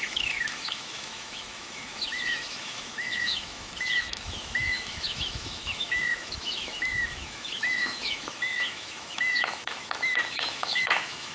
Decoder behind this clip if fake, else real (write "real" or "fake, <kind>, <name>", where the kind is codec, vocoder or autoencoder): fake, autoencoder, DAC-VAE